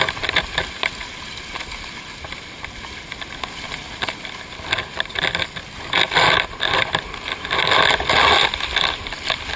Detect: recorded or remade recorded